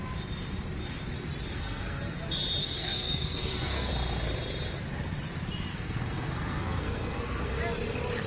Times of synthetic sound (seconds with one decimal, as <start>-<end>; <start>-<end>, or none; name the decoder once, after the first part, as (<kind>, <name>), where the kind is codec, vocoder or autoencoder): 1.5-2.2 (codec, SNAC); 2.6-3.9; 5.7-7.6